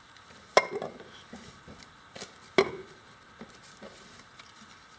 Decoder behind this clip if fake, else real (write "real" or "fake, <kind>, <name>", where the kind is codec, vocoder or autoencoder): real